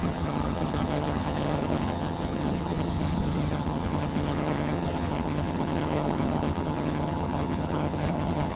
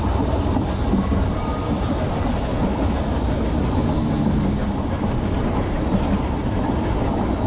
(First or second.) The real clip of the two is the second